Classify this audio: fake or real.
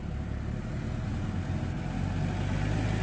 real